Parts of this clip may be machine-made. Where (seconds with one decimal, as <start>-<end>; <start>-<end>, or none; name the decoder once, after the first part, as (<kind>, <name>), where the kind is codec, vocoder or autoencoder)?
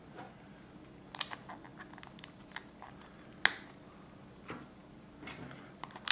none